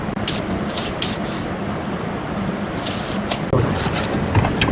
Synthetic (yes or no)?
no